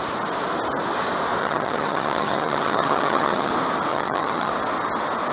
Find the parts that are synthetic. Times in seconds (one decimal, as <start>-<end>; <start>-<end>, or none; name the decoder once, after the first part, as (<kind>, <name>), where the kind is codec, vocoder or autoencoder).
1.4-3.5 (vocoder, HiFi-GAN); 3.9-4.5